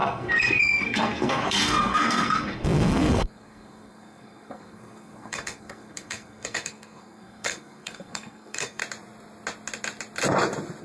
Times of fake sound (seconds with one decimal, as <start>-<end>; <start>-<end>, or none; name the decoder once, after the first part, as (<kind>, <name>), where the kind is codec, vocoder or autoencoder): 0.0-8.8 (codec, SNAC)